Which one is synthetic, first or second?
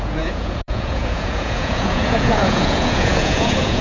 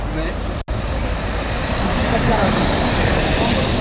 first